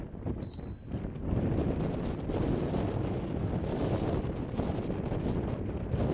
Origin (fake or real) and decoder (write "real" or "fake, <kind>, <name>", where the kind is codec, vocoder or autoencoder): real